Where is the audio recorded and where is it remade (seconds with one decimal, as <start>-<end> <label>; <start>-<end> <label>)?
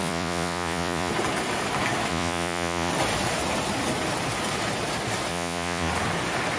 0.0-1.1 remade; 1.1-2.1 recorded; 2.1-2.9 remade; 2.9-5.3 recorded; 5.3-5.9 remade; 5.9-6.6 recorded